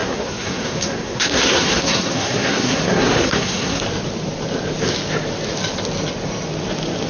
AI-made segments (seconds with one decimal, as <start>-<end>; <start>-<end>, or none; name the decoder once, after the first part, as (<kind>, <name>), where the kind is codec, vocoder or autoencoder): 0.0-3.8 (codec, SNAC)